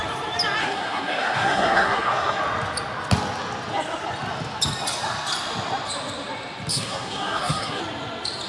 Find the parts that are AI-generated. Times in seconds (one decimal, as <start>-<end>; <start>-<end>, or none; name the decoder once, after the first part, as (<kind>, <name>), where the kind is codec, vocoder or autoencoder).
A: 0.6-2.4 (codec, SNAC); 6.7-7.8